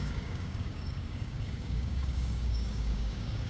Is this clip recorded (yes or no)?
no